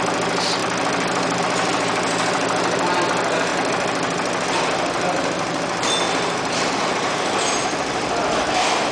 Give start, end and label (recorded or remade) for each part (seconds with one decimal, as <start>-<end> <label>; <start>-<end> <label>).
0.0-0.6 recorded; 0.6-1.4 remade; 1.4-8.9 recorded